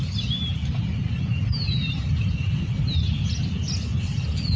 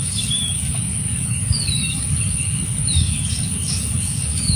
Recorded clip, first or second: first